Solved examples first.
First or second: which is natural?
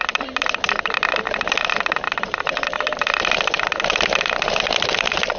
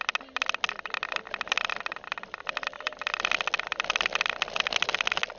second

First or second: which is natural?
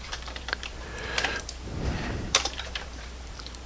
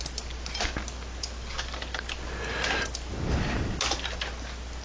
second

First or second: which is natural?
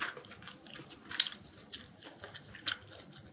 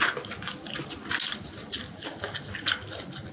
second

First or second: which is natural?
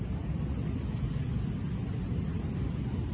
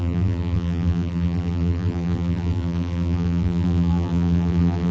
first